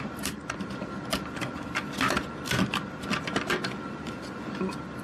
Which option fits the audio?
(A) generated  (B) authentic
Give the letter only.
B